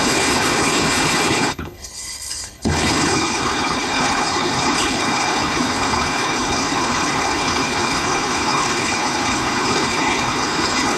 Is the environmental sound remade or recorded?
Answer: remade